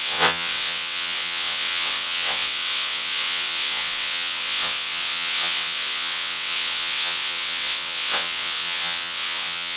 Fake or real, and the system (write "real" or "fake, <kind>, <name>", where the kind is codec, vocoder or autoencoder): fake, vocoder, WaveNeXt